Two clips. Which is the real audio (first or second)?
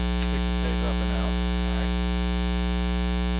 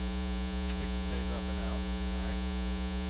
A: first